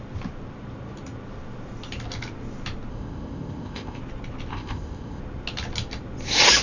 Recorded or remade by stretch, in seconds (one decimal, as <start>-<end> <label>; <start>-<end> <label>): 0.0-2.9 recorded; 2.9-4.0 remade; 4.0-4.5 recorded; 4.5-5.2 remade; 5.2-6.6 recorded